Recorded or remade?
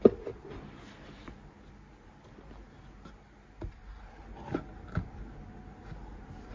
recorded